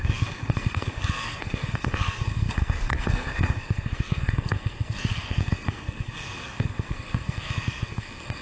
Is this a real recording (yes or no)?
no